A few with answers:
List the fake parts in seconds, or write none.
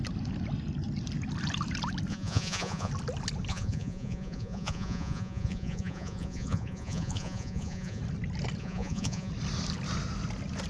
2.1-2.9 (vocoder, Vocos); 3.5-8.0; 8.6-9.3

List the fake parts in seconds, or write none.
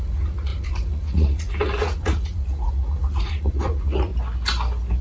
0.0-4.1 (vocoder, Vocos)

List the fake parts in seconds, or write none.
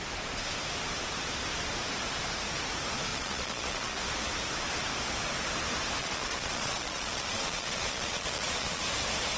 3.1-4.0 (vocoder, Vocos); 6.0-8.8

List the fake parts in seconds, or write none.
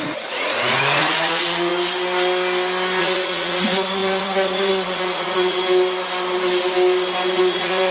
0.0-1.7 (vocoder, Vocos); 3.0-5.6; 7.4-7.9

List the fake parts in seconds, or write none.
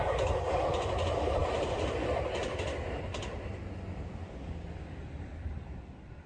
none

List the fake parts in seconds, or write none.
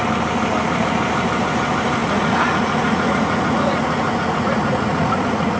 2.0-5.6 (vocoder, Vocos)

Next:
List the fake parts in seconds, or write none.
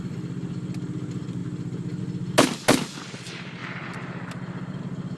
none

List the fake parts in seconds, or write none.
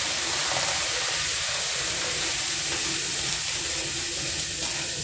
none